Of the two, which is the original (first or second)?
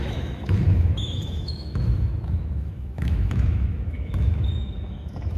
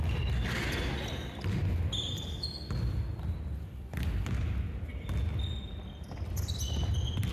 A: second